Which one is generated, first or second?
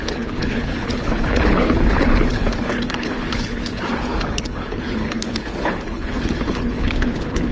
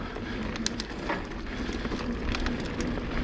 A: first